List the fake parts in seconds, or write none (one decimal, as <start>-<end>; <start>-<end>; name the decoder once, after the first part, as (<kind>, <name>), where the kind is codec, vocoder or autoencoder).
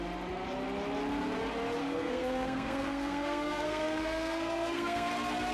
1.8-5.1 (codec, SNAC)